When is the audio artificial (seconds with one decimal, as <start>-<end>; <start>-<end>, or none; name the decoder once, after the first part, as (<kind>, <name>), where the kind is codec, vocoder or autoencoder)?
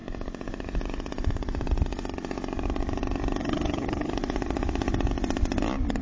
3.4-4.1 (vocoder, HiFi-GAN)